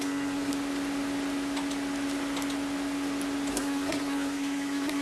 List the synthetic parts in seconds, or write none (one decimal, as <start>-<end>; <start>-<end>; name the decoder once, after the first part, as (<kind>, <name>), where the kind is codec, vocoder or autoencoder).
0.0-0.5 (codec, SNAC); 3.5-5.0